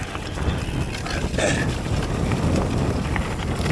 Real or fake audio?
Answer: real